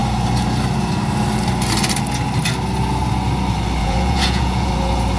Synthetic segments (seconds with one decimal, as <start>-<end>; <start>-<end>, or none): 3.8-4.7